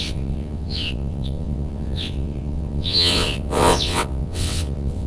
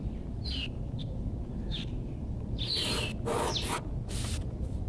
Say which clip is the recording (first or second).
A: second